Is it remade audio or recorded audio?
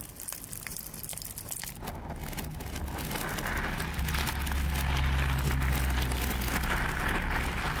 recorded